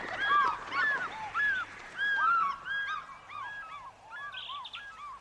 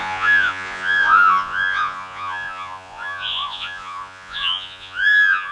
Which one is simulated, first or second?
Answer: second